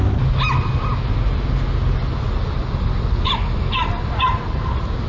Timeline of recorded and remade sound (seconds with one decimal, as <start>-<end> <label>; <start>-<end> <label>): 0.0-5.1 recorded